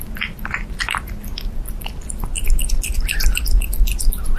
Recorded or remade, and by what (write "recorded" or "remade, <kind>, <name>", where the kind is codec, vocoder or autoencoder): recorded